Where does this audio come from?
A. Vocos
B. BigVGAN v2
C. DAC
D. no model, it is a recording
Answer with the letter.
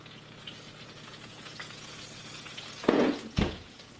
A